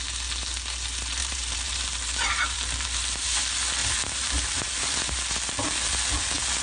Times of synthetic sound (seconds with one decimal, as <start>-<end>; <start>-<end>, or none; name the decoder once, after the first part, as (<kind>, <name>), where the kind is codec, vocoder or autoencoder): 1.2-3.4 (vocoder, BigVGAN v2); 3.8-5.2